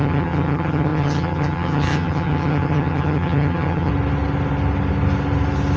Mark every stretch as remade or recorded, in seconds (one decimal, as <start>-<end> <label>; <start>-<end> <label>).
0.0-3.9 remade; 3.9-5.8 recorded